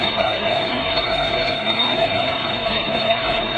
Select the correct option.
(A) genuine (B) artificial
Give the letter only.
B